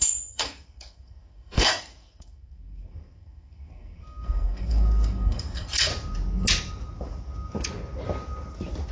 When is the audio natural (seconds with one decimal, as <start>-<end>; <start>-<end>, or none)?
5.9-8.9